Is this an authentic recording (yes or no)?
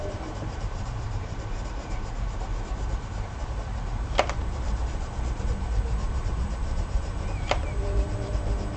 no